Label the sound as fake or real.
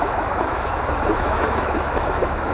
fake